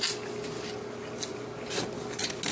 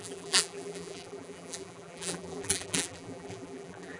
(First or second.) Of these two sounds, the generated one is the second